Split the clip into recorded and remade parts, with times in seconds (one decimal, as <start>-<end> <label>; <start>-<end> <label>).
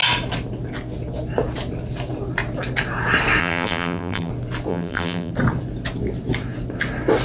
0.0-3.4 recorded; 3.4-4.3 remade; 4.3-4.7 recorded; 4.7-5.3 remade; 5.3-7.2 recorded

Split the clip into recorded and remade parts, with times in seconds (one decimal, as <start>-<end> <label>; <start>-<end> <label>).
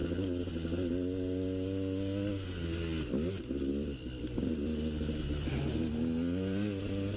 0.0-3.7 recorded; 3.7-5.7 remade; 5.7-7.2 recorded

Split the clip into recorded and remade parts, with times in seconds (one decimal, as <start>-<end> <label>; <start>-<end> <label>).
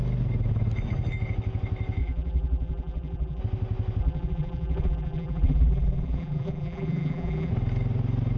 0.0-2.0 recorded; 2.0-3.4 remade; 3.4-4.0 recorded; 4.0-7.5 remade; 7.5-8.4 recorded